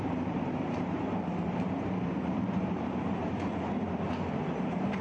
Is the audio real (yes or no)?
no